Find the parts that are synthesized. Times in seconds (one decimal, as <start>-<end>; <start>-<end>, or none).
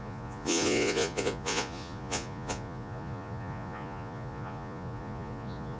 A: 0.0-5.8